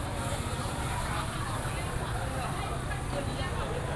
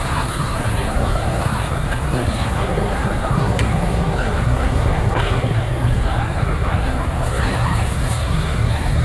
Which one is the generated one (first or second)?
second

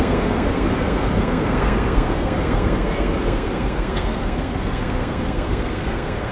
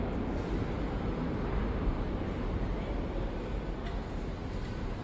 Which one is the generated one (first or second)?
first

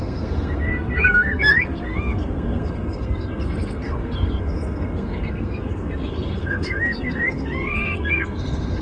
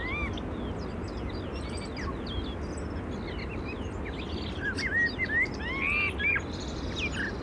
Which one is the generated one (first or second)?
first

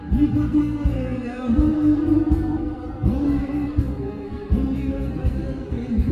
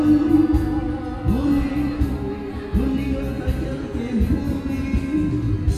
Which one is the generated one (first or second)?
first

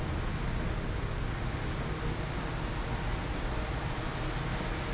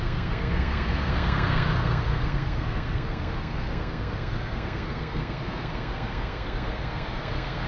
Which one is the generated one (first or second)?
second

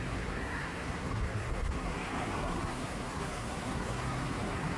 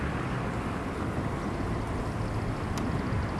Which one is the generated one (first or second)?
first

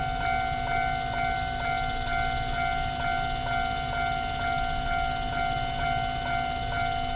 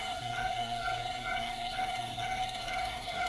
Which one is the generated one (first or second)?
second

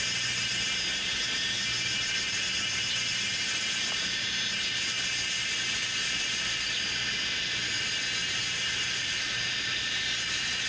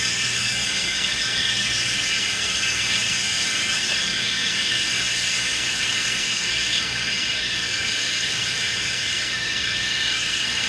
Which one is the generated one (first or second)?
second